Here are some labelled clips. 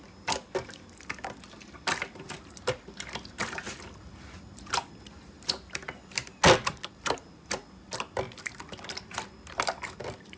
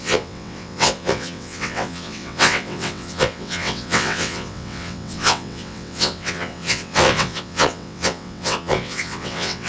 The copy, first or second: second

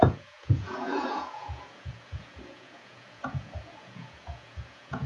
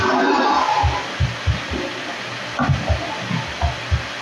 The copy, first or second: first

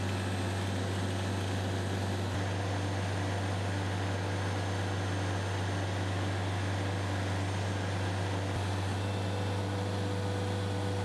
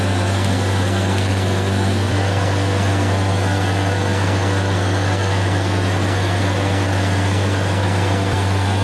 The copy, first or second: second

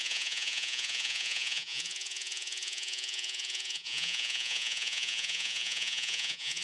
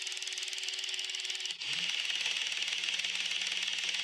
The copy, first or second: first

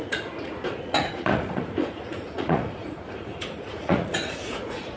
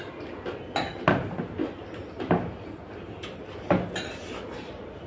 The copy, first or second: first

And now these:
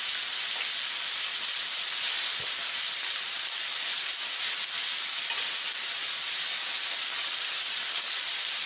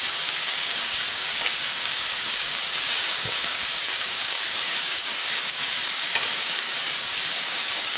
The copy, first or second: second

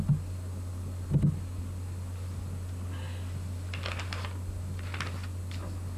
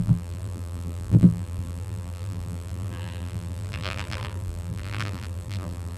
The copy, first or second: second